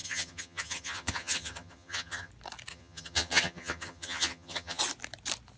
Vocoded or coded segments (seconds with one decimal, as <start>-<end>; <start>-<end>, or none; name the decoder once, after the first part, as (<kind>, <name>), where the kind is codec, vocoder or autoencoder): 0.0-2.3 (vocoder, HiFi-GAN); 2.7-4.8